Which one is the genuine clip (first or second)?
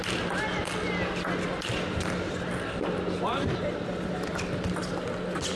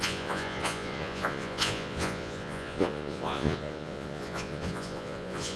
first